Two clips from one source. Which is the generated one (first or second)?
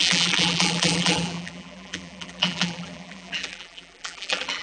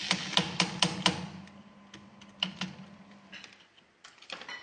first